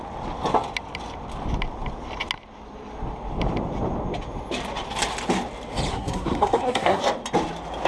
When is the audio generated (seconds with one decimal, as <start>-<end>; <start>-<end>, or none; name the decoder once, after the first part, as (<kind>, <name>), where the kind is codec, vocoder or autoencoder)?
5.9-7.0 (codec, SNAC)